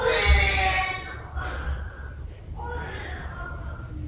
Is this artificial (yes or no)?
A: no